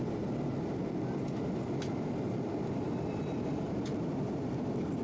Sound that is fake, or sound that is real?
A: real